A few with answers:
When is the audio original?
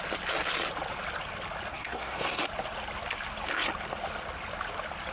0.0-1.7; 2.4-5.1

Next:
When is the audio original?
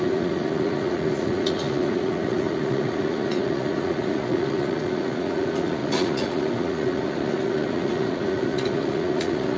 none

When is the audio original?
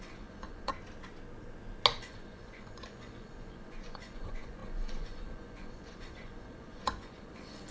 0.7-2.0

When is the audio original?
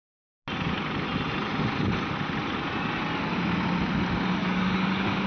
0.0-4.4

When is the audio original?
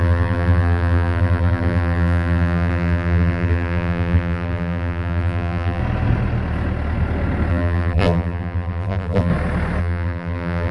5.8-7.5; 9.3-9.8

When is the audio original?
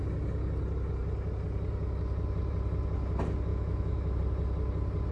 0.0-3.5; 4.2-5.1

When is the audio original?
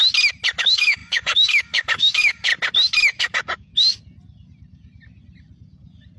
0.0-0.6; 2.5-3.2; 3.7-6.2